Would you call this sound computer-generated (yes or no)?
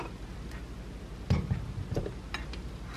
no